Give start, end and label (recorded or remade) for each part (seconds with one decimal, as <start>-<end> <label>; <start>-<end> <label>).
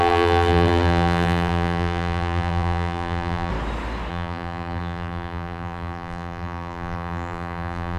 0.0-3.5 remade; 3.5-4.1 recorded; 4.1-8.0 remade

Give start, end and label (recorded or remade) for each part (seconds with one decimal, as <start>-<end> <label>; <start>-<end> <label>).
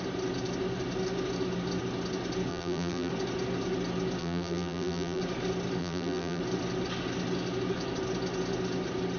0.0-2.5 recorded; 2.5-3.1 remade; 3.1-4.2 recorded; 4.2-5.2 remade; 5.2-5.8 recorded; 5.8-6.4 remade; 6.4-9.2 recorded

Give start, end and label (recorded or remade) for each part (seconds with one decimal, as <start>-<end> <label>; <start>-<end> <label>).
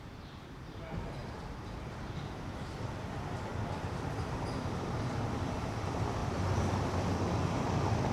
0.0-1.2 recorded; 1.2-2.5 remade; 2.5-6.2 recorded; 6.2-6.8 remade; 6.8-8.1 recorded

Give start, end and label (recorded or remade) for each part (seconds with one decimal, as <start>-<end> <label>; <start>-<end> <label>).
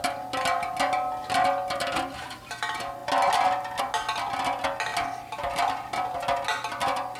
0.0-7.2 recorded